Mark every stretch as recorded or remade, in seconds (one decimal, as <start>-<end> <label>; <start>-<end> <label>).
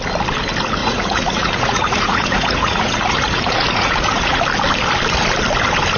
0.0-0.8 recorded; 0.8-4.4 remade; 4.4-6.0 recorded